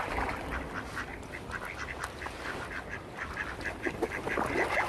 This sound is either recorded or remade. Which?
recorded